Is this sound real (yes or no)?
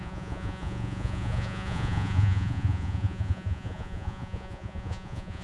no